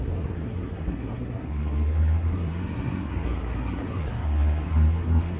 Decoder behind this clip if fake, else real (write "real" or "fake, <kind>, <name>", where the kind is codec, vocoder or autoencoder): fake, codec, SNAC